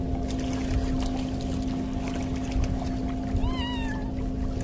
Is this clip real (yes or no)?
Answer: yes